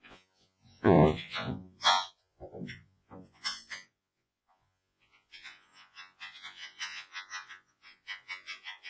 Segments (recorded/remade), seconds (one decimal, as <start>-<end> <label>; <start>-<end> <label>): 0.0-8.9 remade